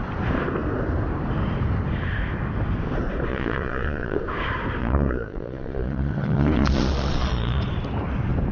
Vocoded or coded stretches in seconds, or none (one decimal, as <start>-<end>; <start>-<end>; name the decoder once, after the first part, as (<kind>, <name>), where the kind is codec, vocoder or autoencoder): 3.3-4.2 (vocoder, Vocos); 4.8-7.6